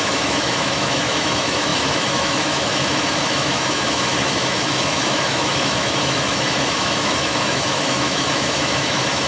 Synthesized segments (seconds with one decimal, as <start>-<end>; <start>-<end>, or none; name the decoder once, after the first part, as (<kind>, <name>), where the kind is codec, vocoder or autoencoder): 0.0-9.3 (autoencoder, DAC-VAE)